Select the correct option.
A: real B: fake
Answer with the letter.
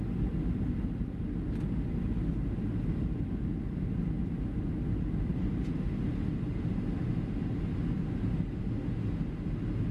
A